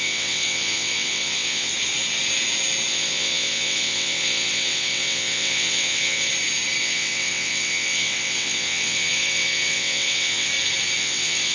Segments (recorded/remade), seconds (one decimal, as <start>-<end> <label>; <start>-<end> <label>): 0.0-1.7 remade; 1.7-2.9 recorded; 2.9-6.3 remade; 6.3-6.8 recorded; 6.8-10.5 remade; 10.5-11.0 recorded; 11.0-11.5 remade